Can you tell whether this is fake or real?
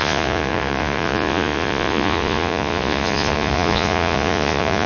fake